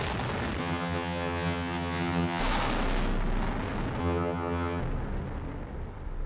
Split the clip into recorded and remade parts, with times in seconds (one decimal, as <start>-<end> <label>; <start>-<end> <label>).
0.0-0.6 recorded; 0.6-2.4 remade; 2.4-4.0 recorded; 4.0-4.8 remade; 4.8-6.3 recorded